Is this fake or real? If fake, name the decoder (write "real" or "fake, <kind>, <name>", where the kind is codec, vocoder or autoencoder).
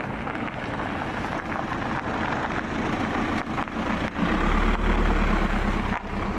real